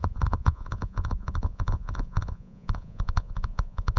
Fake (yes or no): yes